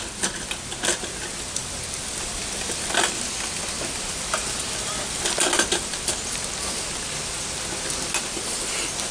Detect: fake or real real